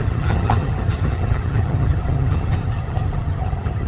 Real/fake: fake